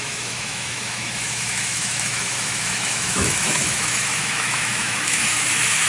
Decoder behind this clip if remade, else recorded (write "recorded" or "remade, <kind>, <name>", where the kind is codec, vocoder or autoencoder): remade, autoencoder, DAC-VAE